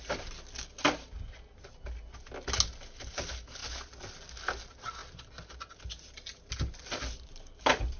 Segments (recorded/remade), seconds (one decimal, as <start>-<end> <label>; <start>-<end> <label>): 0.0-8.0 recorded